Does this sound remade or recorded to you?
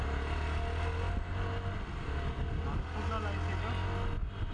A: recorded